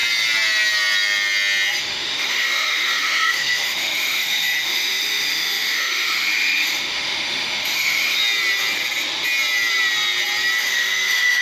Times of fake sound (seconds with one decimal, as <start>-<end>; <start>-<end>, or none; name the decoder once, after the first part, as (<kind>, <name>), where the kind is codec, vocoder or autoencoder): 1.8-8.2 (autoencoder, DAC-VAE); 10.6-11.4